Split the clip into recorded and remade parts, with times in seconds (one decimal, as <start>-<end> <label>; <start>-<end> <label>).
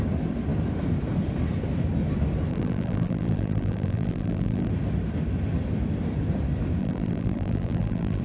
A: 0.0-2.5 recorded; 2.5-4.7 remade; 4.7-6.8 recorded; 6.8-8.2 remade